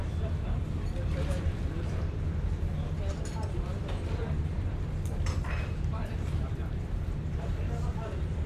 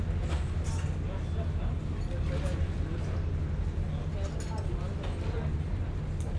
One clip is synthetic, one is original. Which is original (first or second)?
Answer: second